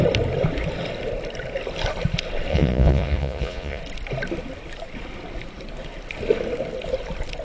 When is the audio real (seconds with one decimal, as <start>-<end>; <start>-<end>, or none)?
0.0-2.5; 3.8-7.4